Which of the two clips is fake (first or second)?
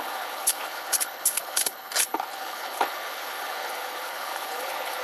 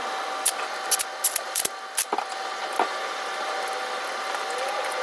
first